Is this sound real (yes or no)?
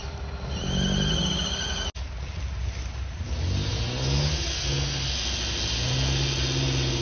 yes